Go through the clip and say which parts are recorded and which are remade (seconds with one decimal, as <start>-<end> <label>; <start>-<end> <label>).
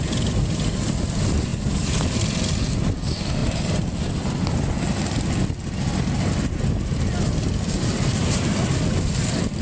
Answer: 0.0-9.6 recorded